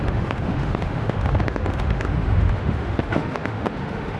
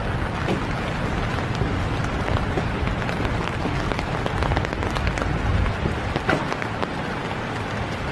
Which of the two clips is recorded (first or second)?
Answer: second